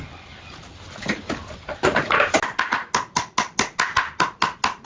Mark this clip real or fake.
real